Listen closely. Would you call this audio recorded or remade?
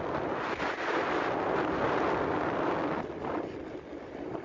recorded